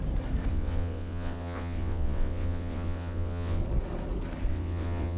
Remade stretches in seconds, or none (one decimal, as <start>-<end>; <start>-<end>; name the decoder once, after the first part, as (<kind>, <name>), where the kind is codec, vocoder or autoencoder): 0.5-3.6 (vocoder, WaveNeXt); 4.5-5.2